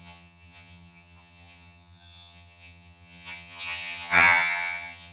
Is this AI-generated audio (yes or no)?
yes